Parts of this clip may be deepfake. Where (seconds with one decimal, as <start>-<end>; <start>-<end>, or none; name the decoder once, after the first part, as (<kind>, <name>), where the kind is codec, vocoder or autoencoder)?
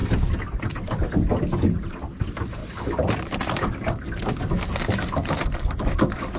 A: none